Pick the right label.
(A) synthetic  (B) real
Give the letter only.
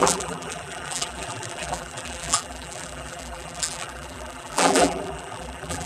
A